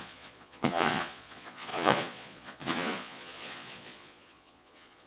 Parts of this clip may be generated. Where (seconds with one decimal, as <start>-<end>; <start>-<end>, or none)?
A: 0.0-5.1